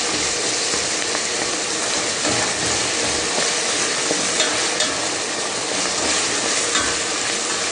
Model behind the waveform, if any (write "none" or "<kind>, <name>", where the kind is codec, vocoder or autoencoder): none